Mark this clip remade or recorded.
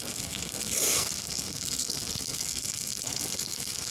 remade